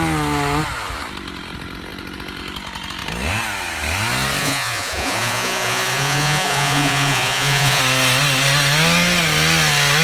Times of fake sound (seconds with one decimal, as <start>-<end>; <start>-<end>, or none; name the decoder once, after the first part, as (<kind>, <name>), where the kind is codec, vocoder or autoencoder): 4.4-7.8 (vocoder, Vocos)